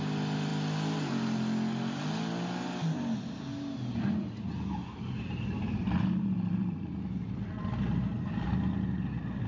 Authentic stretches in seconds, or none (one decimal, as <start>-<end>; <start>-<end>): 0.0-5.8; 8.5-9.5